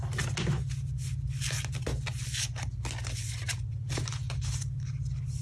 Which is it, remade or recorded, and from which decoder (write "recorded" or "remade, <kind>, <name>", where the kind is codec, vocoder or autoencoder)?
recorded